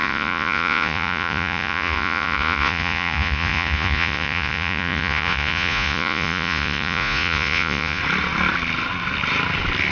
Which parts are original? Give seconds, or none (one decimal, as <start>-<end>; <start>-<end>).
8.0-9.9